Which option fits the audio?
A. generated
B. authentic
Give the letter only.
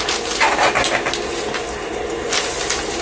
B